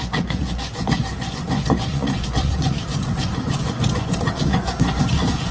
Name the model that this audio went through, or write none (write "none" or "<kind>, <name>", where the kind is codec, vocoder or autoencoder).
vocoder, Vocos